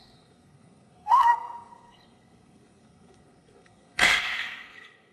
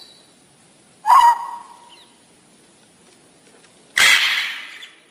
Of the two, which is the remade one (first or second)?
first